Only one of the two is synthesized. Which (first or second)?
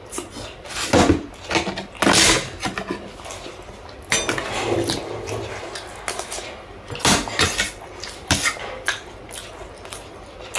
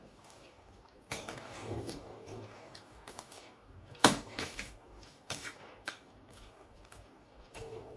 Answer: second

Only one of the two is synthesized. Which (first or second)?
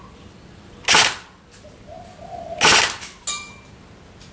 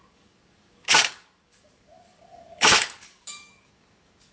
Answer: second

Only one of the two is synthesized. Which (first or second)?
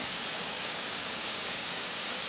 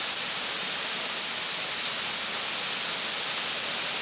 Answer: first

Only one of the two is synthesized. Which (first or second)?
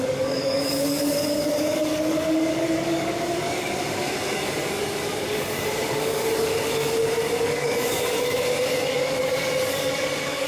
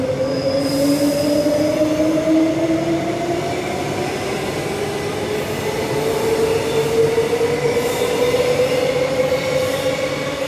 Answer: first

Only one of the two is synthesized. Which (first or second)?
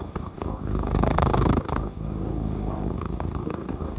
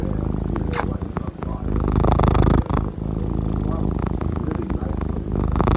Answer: first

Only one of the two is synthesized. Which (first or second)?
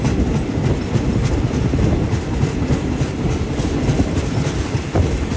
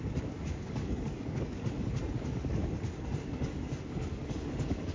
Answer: second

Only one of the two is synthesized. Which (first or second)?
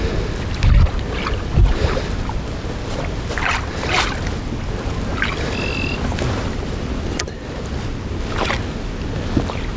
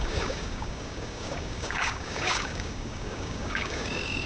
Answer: second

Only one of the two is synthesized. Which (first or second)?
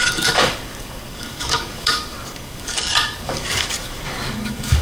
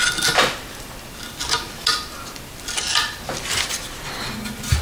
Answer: first